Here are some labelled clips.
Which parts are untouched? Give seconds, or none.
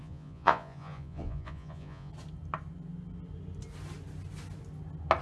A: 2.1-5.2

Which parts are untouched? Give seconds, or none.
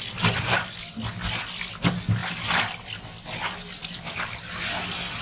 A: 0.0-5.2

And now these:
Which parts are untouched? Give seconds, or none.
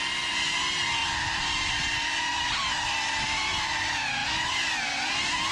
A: 0.0-5.5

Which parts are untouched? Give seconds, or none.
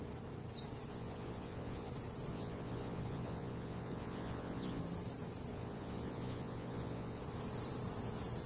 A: 0.0-0.9; 1.9-2.3; 4.8-5.5; 7.2-8.5